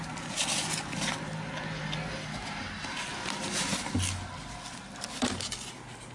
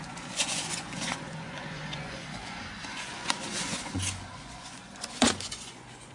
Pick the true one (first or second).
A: first